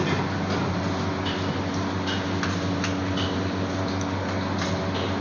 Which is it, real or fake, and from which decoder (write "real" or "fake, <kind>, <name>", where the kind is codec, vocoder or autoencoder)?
real